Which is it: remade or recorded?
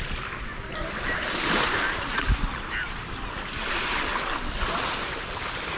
recorded